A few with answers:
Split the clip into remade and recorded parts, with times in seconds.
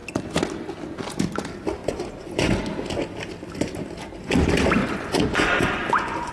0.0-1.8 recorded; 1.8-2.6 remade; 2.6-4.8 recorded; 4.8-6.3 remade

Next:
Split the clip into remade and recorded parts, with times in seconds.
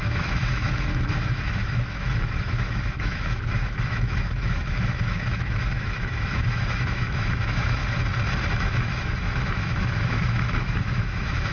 0.0-7.8 remade; 7.8-8.5 recorded; 8.5-11.5 remade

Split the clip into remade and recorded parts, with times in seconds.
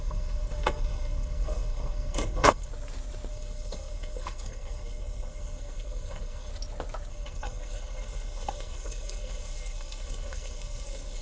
0.0-2.7 remade; 2.7-3.3 recorded; 3.3-6.5 remade; 6.5-7.1 recorded; 7.1-11.2 remade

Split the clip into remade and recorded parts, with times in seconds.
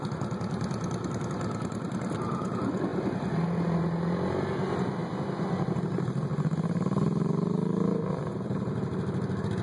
0.0-9.6 recorded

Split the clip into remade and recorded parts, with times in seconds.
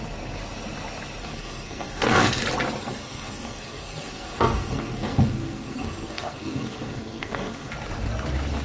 0.0-1.2 recorded; 1.2-2.4 remade; 2.4-2.8 recorded; 2.8-7.7 remade; 7.7-8.6 recorded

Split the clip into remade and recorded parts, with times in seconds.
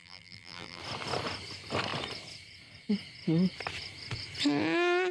0.0-0.8 remade; 0.8-5.1 recorded